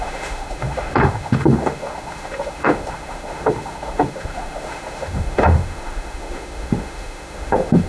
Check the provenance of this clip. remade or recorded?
remade